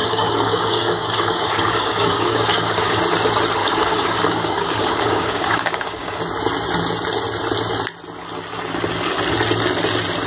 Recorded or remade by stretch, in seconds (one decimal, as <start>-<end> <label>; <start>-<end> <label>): 0.0-3.0 remade; 3.0-3.6 recorded; 3.6-6.2 remade; 6.2-10.3 recorded